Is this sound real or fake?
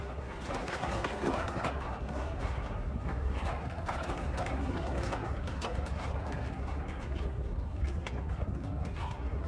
fake